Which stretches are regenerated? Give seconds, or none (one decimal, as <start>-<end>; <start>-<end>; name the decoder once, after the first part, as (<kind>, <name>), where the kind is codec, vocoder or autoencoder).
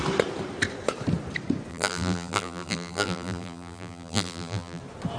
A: 1.7-4.8 (vocoder, BigVGAN v2)